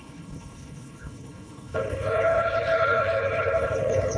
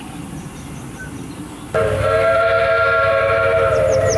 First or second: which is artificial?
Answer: first